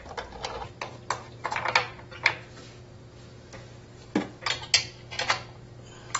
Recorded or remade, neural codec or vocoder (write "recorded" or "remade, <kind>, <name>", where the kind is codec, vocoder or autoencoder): recorded